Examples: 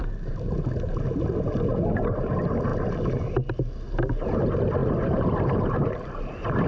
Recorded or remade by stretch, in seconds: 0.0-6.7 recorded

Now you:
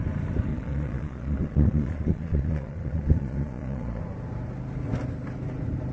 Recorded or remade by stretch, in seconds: 0.0-0.5 recorded; 0.5-4.0 remade; 4.0-5.9 recorded

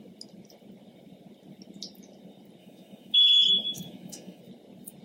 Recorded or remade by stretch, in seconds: 0.0-2.6 recorded; 2.6-4.4 remade; 4.4-5.0 recorded

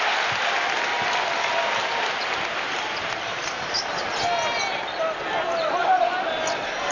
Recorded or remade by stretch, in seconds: 0.0-6.9 recorded

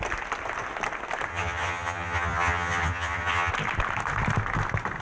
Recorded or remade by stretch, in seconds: 0.0-1.3 recorded; 1.3-3.5 remade; 3.5-5.0 recorded

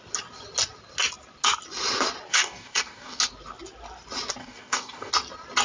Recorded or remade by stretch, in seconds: 0.0-2.3 recorded; 2.3-3.2 remade; 3.2-4.4 recorded; 4.4-5.1 remade; 5.1-5.6 recorded

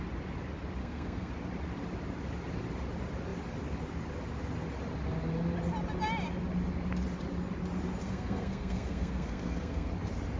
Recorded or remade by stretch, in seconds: 0.0-0.8 recorded; 0.8-1.3 remade; 1.3-8.0 recorded; 8.0-9.9 remade; 9.9-10.4 recorded

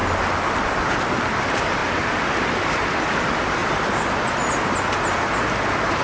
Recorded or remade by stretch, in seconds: 0.0-6.0 recorded